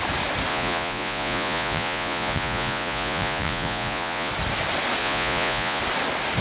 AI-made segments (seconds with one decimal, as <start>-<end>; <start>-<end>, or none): 0.5-4.3; 5.0-5.8